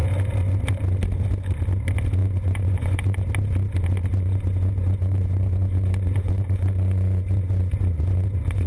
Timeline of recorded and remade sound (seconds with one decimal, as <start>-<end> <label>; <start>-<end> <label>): 0.0-2.2 recorded; 2.2-3.3 remade; 3.3-4.1 recorded; 4.1-8.7 remade